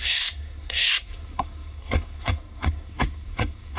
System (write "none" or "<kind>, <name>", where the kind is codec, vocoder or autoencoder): codec, SNAC